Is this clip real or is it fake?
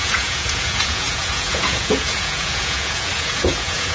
fake